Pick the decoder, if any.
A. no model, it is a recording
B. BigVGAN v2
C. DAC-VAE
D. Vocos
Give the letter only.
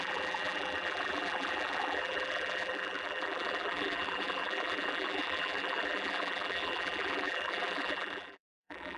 B